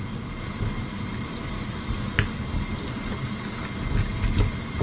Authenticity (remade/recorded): recorded